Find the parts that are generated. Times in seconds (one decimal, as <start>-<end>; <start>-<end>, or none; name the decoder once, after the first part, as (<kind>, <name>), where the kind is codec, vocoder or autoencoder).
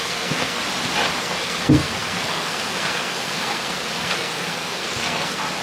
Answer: 0.0-0.6 (codec, SNAC); 1.2-5.6